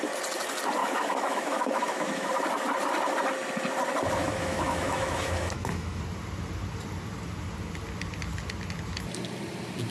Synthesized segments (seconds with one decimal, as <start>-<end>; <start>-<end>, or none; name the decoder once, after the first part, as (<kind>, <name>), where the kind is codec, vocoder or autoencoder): 0.8-2.3 (autoencoder, DAC-VAE); 4.2-6.0